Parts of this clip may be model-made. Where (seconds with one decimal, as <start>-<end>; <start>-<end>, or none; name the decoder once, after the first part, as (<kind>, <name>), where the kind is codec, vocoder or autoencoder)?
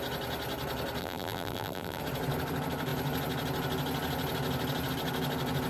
1.0-2.0 (vocoder, BigVGAN v2)